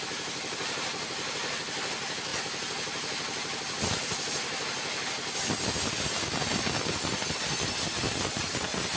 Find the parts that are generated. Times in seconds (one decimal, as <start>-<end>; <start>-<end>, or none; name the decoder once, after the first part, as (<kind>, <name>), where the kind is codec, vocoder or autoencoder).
none